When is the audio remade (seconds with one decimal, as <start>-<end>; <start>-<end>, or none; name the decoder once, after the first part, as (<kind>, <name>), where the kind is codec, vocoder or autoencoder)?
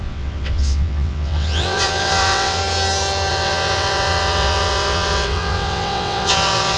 0.0-2.6 (vocoder, WaveNeXt); 3.3-6.8